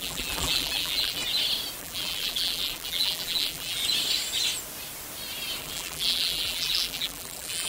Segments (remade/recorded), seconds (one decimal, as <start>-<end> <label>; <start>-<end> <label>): 0.0-1.2 remade; 1.2-1.8 recorded; 1.8-3.8 remade; 3.8-5.6 recorded; 5.6-7.7 remade